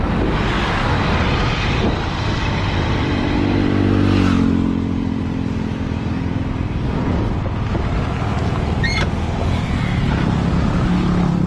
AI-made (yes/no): no